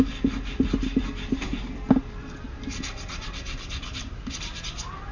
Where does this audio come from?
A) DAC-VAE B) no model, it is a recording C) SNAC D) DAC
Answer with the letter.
B